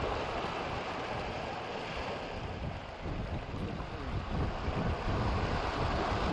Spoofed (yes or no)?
yes